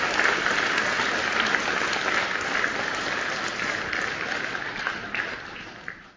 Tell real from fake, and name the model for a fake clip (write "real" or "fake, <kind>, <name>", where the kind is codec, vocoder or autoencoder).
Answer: real